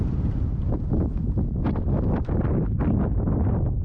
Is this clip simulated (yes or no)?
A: no